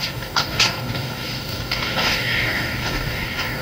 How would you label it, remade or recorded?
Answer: remade